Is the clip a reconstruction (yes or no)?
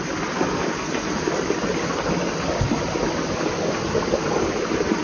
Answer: no